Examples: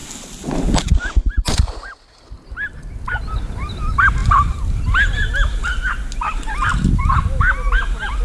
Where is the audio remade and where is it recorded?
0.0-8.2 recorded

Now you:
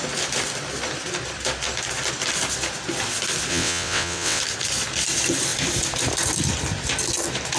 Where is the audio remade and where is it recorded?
0.0-3.5 recorded; 3.5-4.4 remade; 4.4-7.6 recorded

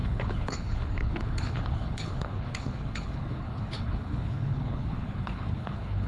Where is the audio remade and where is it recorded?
0.0-6.1 remade

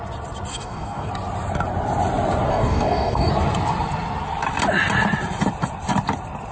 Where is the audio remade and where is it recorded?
0.0-0.5 recorded; 0.5-1.1 remade; 1.1-2.5 recorded; 2.5-3.3 remade; 3.3-6.5 recorded

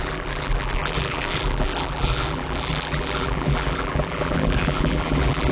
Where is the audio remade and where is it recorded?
0.0-5.5 remade

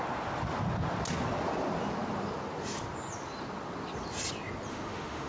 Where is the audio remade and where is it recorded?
0.0-4.7 recorded; 4.7-5.3 remade

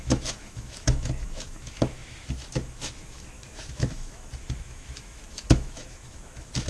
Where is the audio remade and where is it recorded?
0.0-6.7 remade

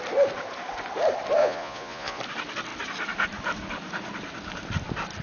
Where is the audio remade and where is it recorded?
0.0-1.4 recorded; 1.4-2.2 remade; 2.2-5.2 recorded